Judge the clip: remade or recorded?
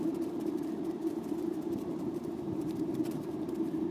remade